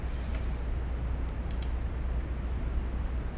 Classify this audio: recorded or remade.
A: recorded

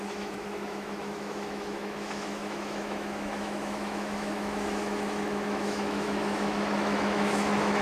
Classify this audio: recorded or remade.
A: remade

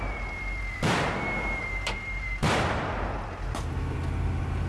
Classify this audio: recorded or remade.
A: recorded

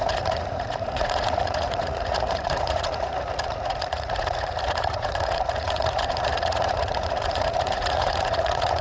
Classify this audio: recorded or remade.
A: remade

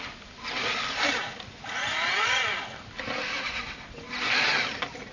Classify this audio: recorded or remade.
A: recorded